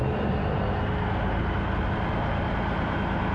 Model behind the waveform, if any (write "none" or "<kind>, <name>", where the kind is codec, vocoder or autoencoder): none